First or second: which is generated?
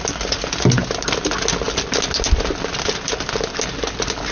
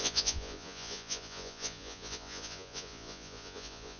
second